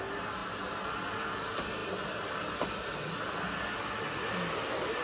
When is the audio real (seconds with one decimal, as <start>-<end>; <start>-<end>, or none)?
0.0-5.0